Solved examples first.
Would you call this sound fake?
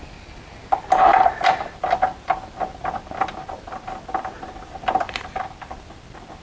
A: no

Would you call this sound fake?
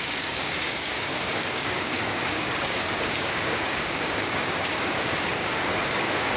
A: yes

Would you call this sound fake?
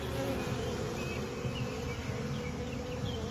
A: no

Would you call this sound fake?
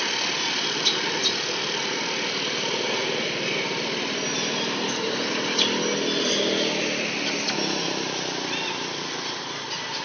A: no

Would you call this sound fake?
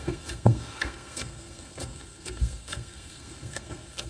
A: yes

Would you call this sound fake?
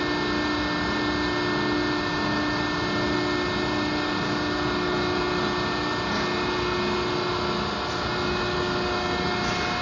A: no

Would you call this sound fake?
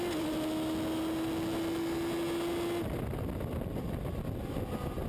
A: no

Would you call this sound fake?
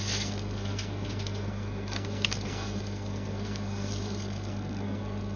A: yes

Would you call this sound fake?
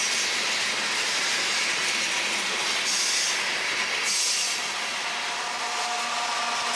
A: no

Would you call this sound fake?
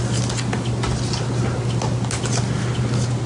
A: no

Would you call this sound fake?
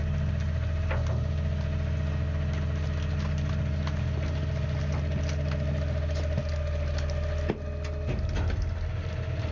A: no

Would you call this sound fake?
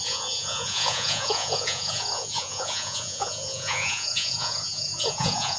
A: yes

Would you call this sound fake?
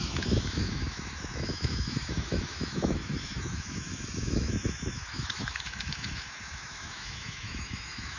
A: yes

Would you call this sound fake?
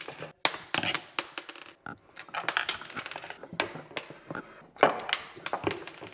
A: no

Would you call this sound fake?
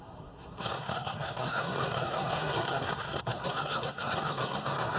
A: yes